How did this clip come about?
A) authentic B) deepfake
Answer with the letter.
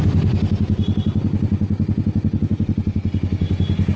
A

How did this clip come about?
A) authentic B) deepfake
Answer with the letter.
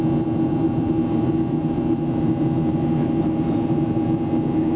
B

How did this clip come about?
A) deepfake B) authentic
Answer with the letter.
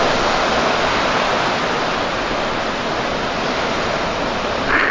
B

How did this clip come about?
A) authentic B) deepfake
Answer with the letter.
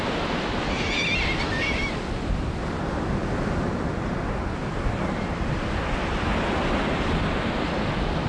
A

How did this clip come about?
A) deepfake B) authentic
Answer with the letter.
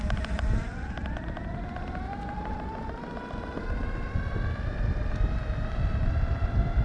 B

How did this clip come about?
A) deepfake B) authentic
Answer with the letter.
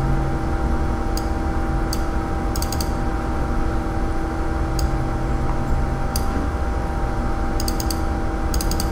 B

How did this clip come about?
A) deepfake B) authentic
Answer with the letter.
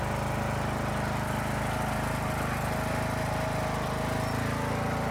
B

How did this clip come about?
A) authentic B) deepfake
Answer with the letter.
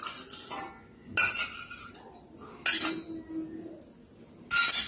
A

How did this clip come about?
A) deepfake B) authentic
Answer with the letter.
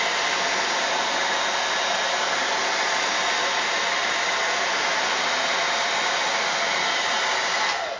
B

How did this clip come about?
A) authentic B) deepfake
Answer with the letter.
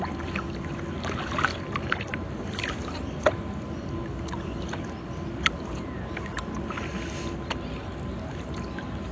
B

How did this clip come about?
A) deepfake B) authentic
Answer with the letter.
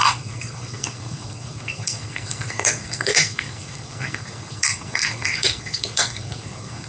A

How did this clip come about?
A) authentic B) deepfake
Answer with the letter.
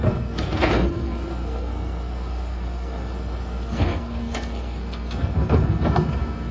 B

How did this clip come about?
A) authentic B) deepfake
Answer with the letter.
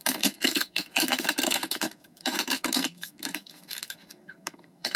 B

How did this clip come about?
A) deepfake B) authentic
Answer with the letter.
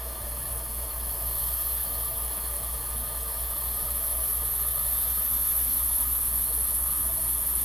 A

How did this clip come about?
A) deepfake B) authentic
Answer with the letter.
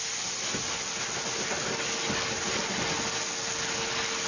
B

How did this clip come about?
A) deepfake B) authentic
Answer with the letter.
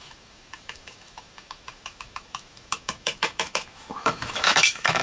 A